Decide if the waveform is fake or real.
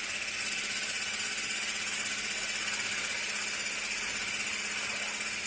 real